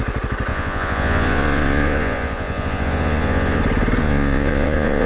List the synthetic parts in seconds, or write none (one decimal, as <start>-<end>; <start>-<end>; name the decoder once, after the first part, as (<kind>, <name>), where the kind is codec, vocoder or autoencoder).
0.5-3.6 (vocoder, Vocos); 4.0-5.1